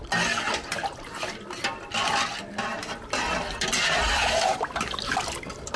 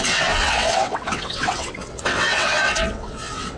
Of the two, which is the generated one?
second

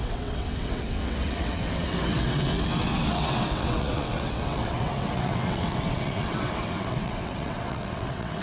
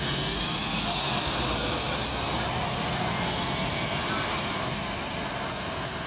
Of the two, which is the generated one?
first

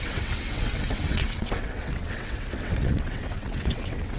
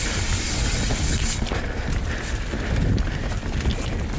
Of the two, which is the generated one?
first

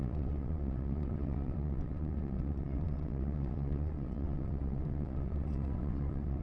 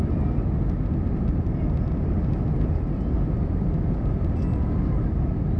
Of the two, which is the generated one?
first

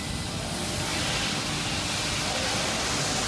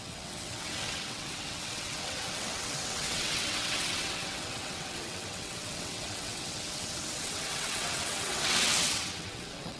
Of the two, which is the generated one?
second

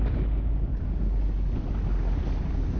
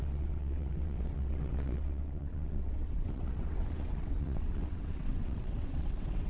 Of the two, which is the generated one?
second